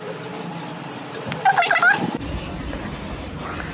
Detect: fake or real real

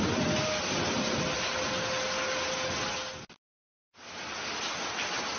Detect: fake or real real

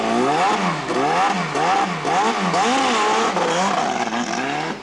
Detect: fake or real real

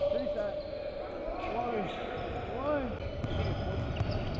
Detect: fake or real real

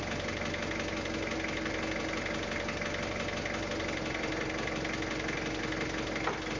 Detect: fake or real real